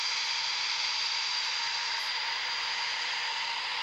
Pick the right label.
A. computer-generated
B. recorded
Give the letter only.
B